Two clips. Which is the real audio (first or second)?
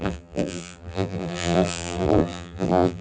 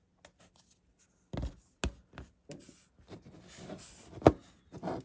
second